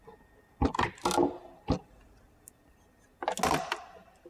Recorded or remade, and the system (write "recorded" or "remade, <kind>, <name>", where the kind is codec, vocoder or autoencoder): recorded